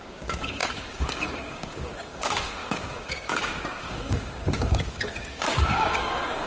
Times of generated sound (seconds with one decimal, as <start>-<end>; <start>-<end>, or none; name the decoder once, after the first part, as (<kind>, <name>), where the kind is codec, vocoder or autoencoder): 0.0-6.5 (codec, DAC)